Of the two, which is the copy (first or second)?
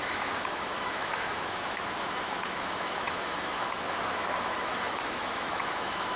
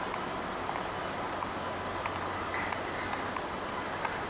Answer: first